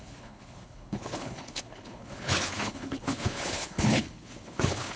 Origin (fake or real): fake